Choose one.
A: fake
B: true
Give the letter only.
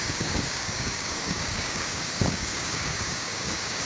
A